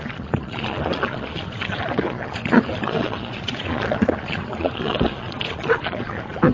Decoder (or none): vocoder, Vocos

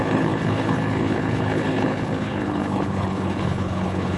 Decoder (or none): codec, HILCodec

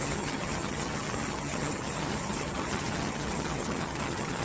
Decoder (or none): vocoder, HiFi-GAN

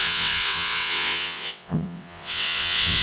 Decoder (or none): vocoder, WaveNeXt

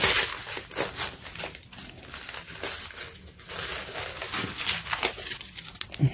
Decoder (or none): none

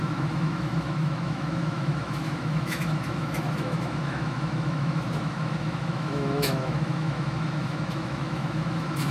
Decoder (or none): autoencoder, DAC-VAE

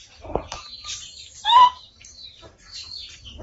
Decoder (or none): vocoder, BigVGAN v2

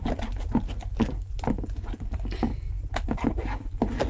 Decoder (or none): none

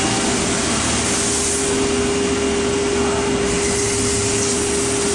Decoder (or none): none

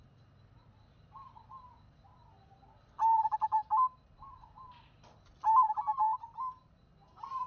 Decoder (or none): none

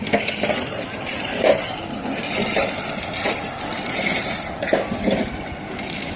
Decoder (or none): none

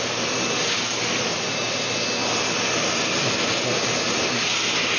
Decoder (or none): none